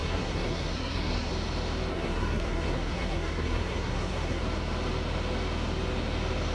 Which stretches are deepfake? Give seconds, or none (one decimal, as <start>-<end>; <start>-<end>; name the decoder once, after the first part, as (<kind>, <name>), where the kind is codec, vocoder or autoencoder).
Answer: 0.0-1.3 (codec, SNAC); 1.9-4.4